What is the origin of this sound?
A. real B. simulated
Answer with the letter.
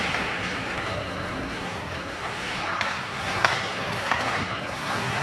B